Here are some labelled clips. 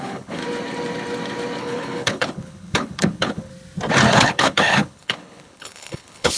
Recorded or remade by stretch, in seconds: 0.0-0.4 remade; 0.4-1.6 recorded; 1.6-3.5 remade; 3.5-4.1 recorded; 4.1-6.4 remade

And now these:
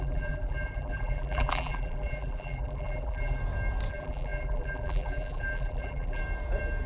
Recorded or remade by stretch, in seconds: 0.0-3.4 remade; 3.4-3.9 recorded; 3.9-6.2 remade; 6.2-6.9 recorded

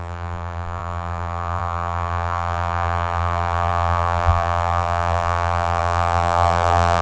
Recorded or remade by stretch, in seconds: 0.0-7.0 remade

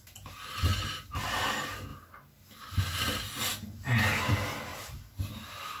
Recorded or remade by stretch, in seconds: 0.0-4.7 recorded; 4.7-5.3 remade; 5.3-5.8 recorded